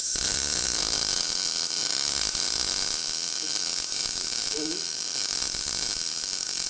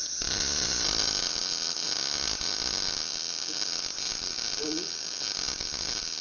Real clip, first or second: second